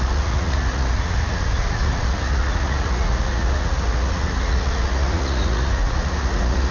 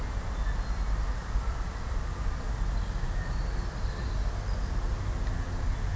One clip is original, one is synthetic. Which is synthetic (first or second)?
first